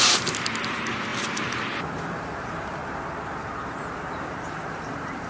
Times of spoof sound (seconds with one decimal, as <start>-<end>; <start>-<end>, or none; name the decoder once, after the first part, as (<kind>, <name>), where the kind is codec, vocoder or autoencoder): 0.0-2.8 (vocoder, BigVGAN v2); 4.2-5.3